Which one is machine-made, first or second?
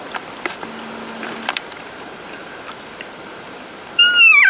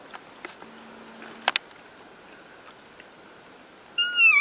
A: first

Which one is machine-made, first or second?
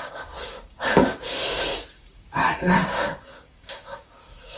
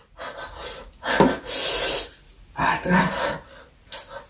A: first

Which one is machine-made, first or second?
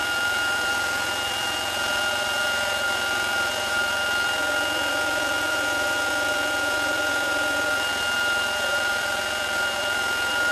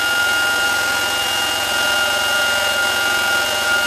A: first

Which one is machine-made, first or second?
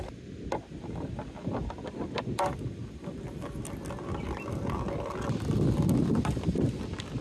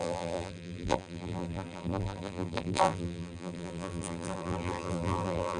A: second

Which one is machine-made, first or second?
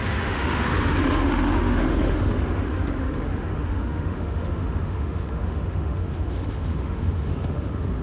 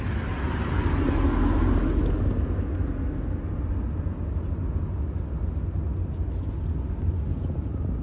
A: first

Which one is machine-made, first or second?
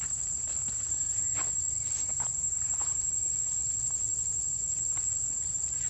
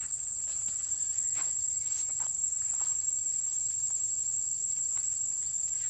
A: second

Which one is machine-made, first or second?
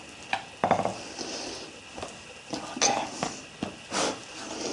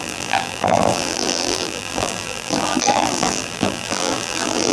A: second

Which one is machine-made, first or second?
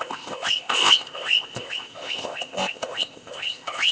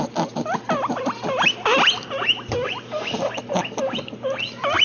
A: first